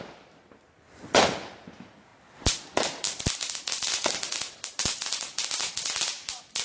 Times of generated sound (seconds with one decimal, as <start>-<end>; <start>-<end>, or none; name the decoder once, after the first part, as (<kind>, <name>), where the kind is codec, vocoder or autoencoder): none